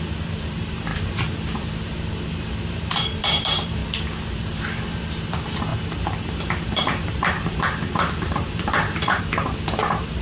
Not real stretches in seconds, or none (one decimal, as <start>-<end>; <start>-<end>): 0.0-3.8; 4.4-10.2